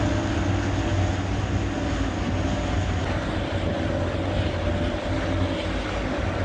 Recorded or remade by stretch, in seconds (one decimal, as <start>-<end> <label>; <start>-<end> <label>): 0.0-6.4 recorded